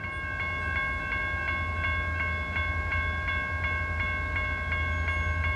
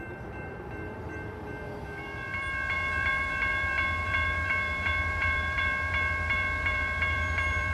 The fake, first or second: second